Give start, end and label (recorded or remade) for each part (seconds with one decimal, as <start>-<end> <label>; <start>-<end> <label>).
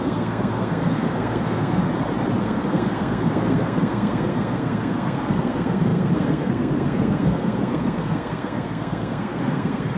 0.0-1.8 remade; 1.8-2.4 recorded; 2.4-10.0 remade